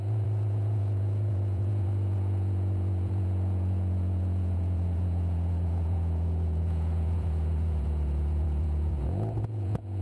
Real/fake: fake